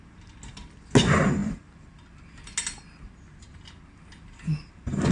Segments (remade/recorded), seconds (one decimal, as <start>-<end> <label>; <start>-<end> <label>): 0.0-5.1 recorded

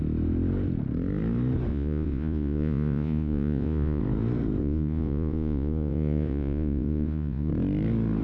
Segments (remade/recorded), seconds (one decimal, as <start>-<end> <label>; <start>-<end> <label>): 0.0-1.7 recorded; 1.7-4.0 remade; 4.0-4.6 recorded; 4.6-7.5 remade; 7.5-8.2 recorded

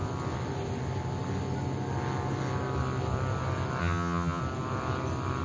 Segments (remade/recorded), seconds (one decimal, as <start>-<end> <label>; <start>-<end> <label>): 0.0-3.8 recorded; 3.8-4.4 remade; 4.4-5.4 recorded

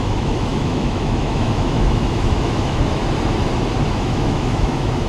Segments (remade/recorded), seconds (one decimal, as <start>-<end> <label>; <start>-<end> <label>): 0.0-3.0 remade; 3.0-3.9 recorded; 3.9-5.1 remade

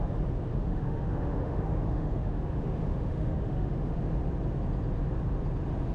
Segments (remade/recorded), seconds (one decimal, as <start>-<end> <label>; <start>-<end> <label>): 0.0-0.5 recorded; 0.5-4.0 remade; 4.0-5.9 recorded

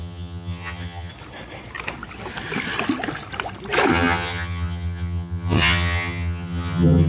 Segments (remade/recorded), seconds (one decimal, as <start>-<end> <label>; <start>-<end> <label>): 0.0-1.1 remade; 1.1-3.9 recorded; 3.9-7.1 remade

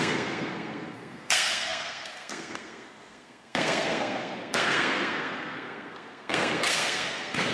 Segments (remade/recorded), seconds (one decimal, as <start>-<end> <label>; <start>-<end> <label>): 0.0-7.5 remade

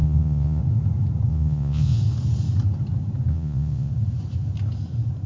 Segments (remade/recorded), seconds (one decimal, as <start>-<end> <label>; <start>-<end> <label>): 0.0-0.6 remade; 0.6-1.3 recorded; 1.3-2.0 remade; 2.0-3.3 recorded; 3.3-3.9 remade; 3.9-5.3 recorded